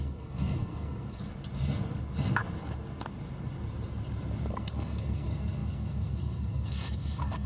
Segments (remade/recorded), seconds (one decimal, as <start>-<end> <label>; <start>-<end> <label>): 0.0-1.2 remade; 1.2-4.5 recorded; 4.5-7.5 remade